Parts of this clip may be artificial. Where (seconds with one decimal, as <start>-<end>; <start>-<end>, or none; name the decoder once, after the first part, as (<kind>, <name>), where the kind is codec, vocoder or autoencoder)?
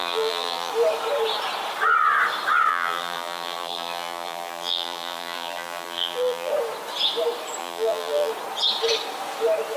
0.0-0.7 (vocoder, BigVGAN v2); 2.7-6.5; 7.6-8.3